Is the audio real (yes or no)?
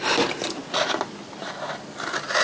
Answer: yes